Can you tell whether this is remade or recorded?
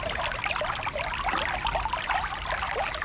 recorded